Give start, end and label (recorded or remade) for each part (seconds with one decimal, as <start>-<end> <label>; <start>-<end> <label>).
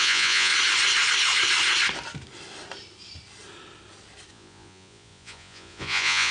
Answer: 0.0-0.5 remade; 0.5-4.3 recorded; 4.3-6.3 remade